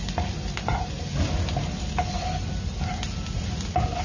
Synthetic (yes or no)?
no